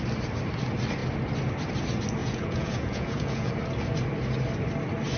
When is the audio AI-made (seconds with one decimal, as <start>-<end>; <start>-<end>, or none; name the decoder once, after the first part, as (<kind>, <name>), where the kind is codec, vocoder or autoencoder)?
2.2-3.5 (vocoder, Vocos)